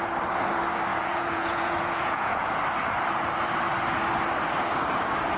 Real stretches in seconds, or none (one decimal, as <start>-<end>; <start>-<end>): 0.0-0.9; 2.5-5.4

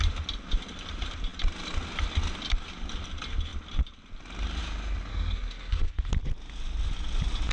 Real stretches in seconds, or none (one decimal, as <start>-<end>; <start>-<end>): 0.0-5.1; 6.0-7.5

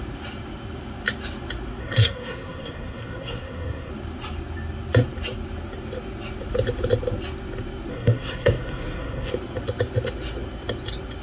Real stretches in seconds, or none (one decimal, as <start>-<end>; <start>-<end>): 0.0-1.8; 3.9-7.9; 9.3-11.2

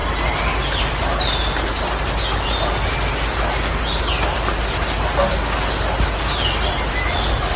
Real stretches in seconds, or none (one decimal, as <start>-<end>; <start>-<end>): 0.0-7.6

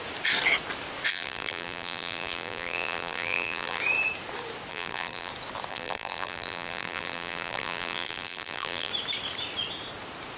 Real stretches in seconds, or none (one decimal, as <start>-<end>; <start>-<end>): 0.0-1.1; 3.8-4.7; 5.3-5.7; 8.9-10.4

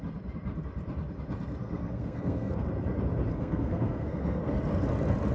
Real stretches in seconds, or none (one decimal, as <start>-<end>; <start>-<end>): 0.0-1.6; 2.7-3.3; 4.4-5.3